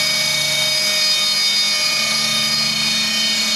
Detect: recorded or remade recorded